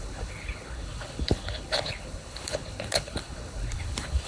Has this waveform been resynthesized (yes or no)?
yes